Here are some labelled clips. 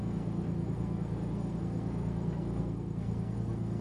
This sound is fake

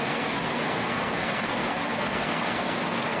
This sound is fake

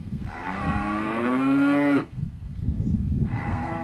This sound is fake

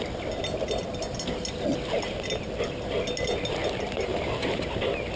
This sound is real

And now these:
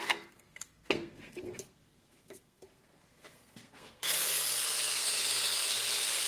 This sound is fake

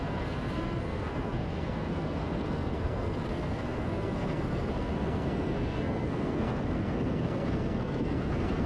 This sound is fake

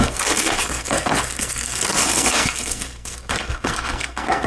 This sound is fake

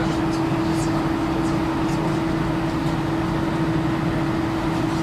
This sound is real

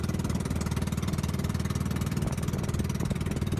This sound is real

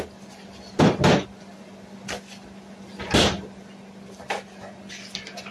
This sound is real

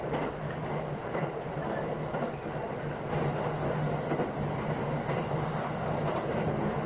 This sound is real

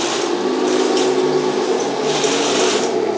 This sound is real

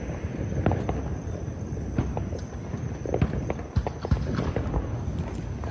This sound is real